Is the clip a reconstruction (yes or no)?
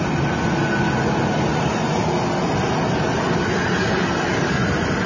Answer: no